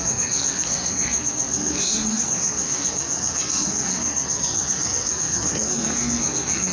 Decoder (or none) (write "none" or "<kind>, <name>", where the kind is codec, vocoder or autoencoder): codec, SNAC